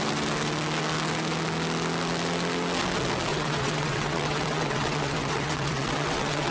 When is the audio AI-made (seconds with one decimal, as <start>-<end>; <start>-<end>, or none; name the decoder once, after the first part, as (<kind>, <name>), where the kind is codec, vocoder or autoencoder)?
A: 3.3-6.5 (vocoder, WaveNeXt)